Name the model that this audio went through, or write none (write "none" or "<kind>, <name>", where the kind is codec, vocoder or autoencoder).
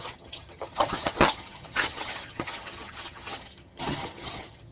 vocoder, HiFi-GAN